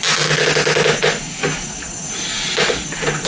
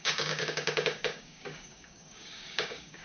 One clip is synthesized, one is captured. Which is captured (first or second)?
first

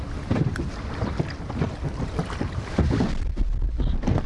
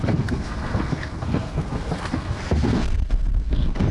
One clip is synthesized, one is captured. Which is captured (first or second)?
first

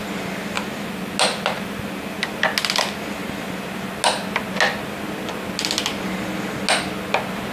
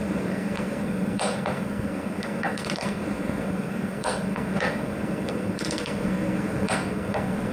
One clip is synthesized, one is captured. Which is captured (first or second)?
first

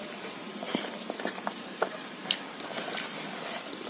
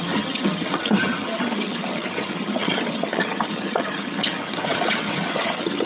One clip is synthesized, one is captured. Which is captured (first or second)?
first